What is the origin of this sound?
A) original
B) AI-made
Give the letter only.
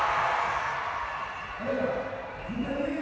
B